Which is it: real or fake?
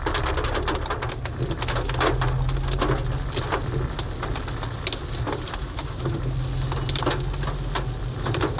real